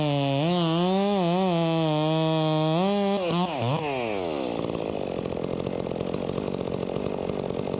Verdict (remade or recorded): recorded